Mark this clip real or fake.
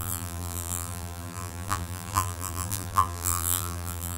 fake